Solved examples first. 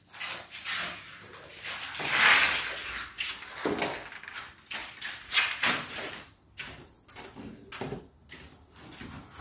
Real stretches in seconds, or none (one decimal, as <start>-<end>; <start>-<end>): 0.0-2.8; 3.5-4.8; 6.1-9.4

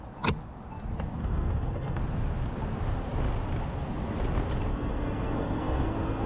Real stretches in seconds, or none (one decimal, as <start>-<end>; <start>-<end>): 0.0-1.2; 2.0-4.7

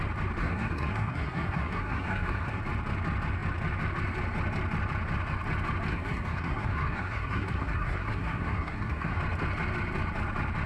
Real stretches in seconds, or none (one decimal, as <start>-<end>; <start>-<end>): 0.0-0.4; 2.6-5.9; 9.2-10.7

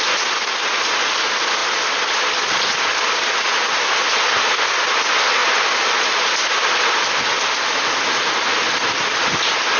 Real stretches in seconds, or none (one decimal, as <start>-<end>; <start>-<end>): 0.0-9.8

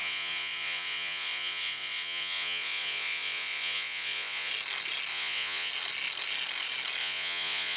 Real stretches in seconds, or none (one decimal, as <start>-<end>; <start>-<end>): 4.5-5.1; 5.7-7.0

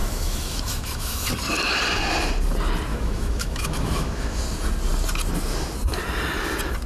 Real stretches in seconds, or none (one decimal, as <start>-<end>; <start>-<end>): 1.3-2.9; 4.4-6.9

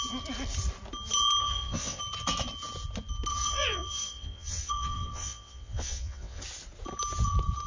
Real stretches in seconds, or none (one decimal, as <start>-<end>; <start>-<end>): 0.0-1.4; 2.0-3.3; 6.4-7.7

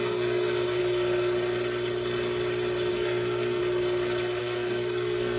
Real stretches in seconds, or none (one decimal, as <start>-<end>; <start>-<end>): 0.8-2.9; 3.6-4.4